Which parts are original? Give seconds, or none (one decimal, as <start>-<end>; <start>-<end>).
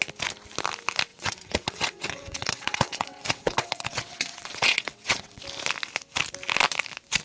0.0-1.1; 5.4-7.2